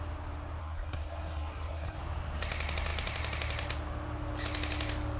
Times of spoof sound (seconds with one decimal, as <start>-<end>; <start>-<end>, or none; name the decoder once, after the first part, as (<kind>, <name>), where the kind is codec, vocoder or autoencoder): 0.6-2.0 (codec, SNAC)